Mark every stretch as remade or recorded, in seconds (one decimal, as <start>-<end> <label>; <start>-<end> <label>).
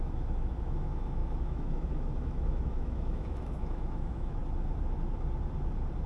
0.0-4.4 remade; 4.4-6.1 recorded